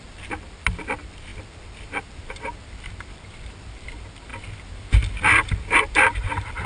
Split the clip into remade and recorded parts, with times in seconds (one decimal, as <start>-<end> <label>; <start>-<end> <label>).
0.0-6.7 recorded